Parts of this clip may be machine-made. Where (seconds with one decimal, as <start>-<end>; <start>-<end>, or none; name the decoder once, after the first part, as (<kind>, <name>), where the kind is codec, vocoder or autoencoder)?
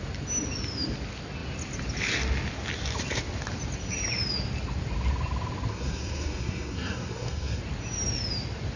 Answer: 5.7-7.6 (codec, SNAC)